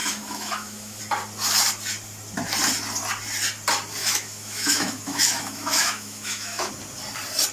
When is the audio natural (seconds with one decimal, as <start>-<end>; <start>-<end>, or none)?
1.0-4.0; 6.7-7.5